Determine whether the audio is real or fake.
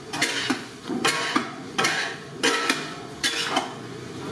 fake